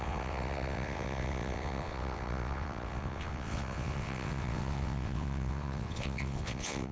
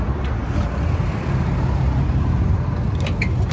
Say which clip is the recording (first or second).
second